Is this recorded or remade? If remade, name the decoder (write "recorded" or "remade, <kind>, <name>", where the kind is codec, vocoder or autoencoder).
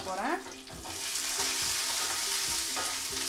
recorded